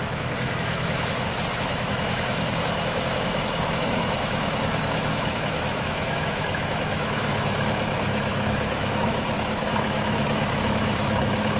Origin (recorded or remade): remade